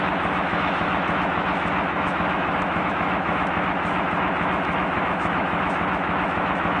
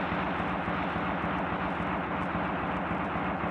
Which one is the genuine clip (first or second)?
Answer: second